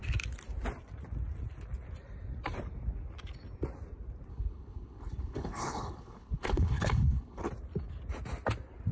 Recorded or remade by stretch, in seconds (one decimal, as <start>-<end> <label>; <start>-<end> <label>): 0.0-4.3 recorded; 4.3-7.5 remade; 7.5-8.9 recorded